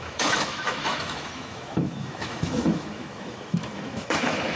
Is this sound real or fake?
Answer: fake